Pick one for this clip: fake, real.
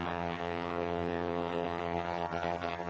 fake